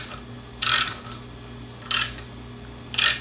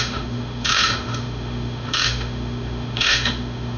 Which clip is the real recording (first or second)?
first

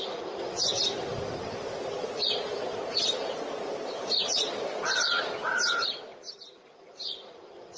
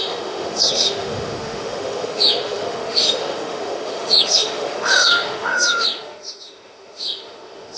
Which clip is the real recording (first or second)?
first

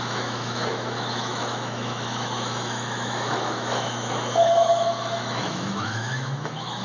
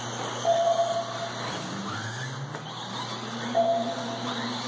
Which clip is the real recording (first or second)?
second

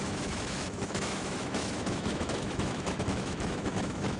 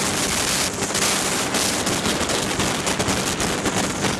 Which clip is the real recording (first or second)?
second